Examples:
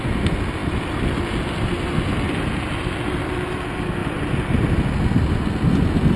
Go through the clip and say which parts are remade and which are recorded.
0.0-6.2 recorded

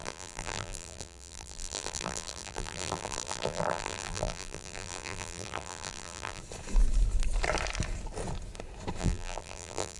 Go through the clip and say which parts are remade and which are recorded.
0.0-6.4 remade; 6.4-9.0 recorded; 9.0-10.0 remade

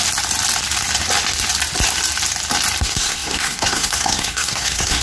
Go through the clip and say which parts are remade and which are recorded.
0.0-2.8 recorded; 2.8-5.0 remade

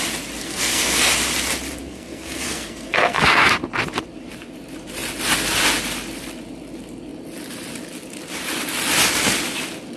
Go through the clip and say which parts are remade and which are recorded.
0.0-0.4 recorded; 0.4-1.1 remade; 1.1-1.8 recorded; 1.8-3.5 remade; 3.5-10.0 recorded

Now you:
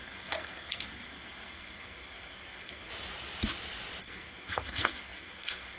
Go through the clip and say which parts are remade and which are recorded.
0.0-2.9 remade; 2.9-4.0 recorded; 4.0-5.8 remade

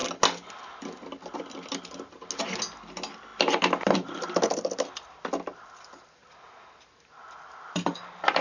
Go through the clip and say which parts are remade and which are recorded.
0.0-3.3 recorded; 3.3-8.4 remade

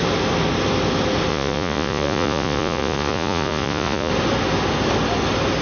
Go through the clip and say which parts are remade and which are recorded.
0.0-1.3 recorded; 1.3-4.1 remade; 4.1-5.6 recorded